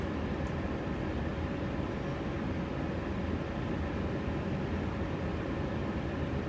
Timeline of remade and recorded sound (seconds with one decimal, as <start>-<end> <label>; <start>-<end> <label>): 0.0-1.3 remade; 1.3-5.2 recorded; 5.2-6.5 remade